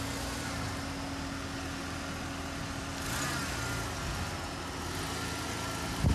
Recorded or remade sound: recorded